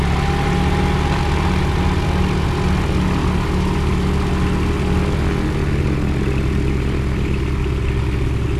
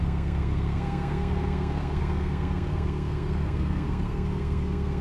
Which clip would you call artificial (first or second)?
second